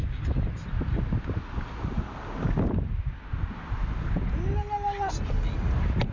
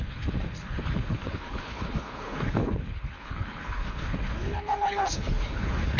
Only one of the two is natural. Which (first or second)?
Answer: first